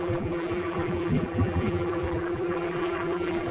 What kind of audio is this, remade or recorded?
remade